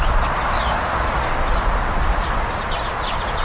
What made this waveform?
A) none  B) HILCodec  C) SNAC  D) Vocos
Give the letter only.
A